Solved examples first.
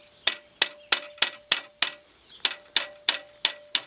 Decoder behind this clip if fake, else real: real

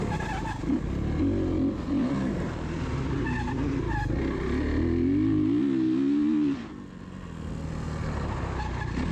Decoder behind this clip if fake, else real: real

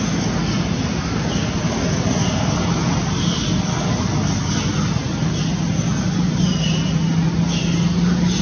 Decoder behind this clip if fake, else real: real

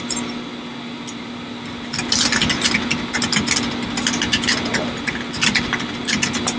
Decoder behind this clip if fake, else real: real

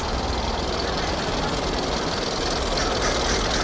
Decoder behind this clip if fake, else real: real